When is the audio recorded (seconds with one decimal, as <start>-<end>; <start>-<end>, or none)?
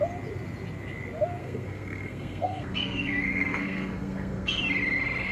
0.0-1.4; 4.6-5.3